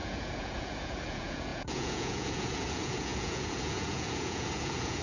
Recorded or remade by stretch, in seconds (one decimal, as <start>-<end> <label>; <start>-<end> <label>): 0.0-5.0 remade